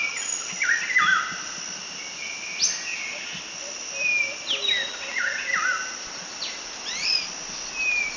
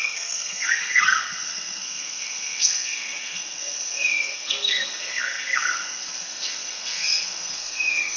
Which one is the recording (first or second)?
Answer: first